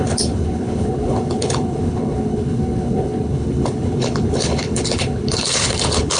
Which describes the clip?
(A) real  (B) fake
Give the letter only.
B